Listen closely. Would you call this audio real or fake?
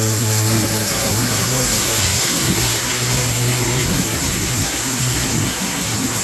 fake